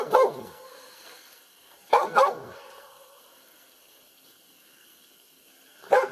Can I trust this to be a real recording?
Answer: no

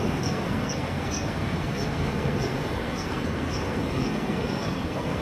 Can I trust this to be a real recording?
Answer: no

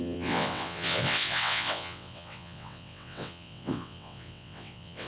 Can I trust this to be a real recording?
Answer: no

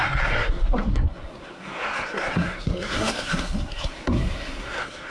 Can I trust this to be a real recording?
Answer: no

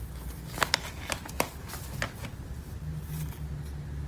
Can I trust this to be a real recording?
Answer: yes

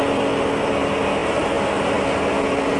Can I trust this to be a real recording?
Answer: yes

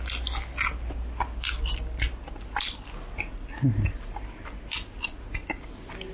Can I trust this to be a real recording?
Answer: yes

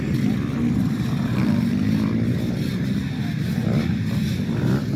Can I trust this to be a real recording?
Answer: no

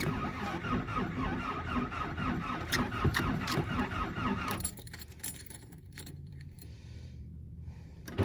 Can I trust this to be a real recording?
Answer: no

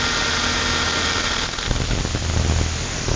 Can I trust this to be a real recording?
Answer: yes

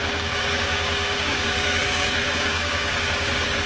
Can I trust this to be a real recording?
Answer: no